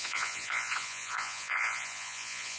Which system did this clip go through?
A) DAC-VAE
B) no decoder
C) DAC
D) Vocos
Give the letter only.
D